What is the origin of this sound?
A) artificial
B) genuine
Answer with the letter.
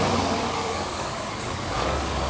A